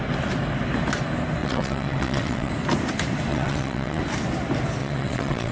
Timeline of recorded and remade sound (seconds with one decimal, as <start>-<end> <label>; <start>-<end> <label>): 0.0-1.4 recorded; 1.4-2.5 remade; 2.5-3.3 recorded; 3.3-4.0 remade; 4.0-4.8 recorded; 4.8-5.5 remade